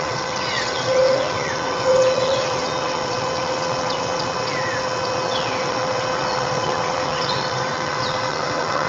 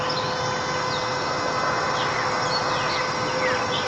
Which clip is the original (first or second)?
second